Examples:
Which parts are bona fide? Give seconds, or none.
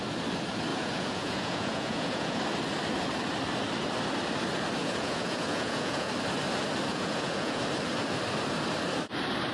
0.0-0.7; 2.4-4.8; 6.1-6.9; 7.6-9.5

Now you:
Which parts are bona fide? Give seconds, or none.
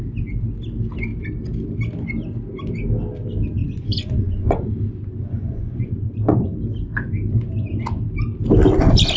0.0-3.6; 4.7-5.2; 6.5-9.2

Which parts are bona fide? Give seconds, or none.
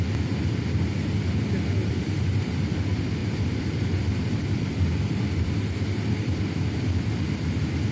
0.0-1.8; 2.4-3.2; 6.4-7.9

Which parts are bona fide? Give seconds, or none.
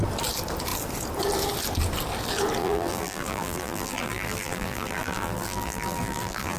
0.0-2.6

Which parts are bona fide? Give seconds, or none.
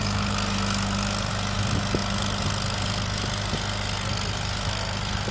0.0-5.3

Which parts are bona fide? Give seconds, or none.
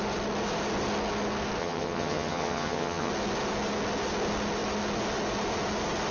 0.0-1.6; 3.1-6.1